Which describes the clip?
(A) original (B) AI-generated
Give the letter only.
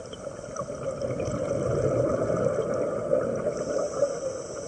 A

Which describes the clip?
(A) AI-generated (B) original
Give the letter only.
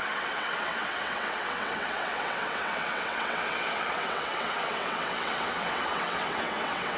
A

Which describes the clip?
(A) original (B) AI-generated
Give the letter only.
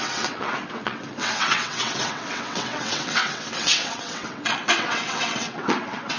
B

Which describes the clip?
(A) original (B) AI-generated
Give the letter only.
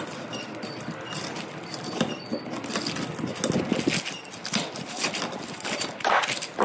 A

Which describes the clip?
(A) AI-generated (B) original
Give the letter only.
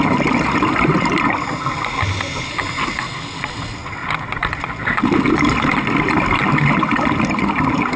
B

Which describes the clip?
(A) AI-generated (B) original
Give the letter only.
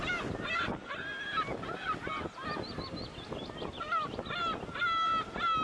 B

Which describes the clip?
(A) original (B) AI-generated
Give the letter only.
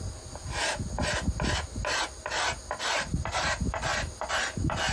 A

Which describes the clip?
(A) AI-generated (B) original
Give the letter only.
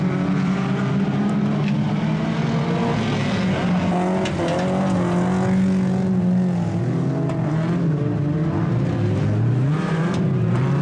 B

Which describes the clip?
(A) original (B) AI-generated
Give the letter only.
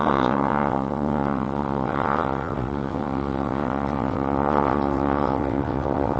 B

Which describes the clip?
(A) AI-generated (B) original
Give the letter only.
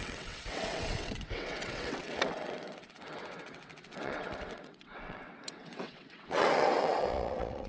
A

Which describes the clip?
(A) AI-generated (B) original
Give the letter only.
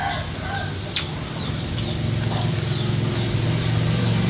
B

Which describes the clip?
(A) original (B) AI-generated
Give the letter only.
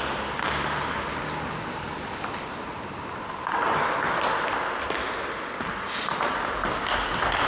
A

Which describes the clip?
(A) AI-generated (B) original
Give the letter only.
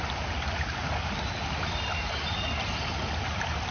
B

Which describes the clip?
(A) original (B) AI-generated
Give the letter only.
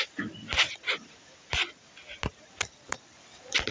A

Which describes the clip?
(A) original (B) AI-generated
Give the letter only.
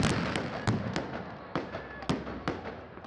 A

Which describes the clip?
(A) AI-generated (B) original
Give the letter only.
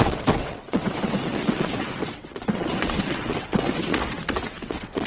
A